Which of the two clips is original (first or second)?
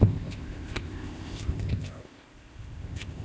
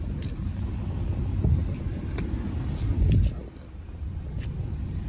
second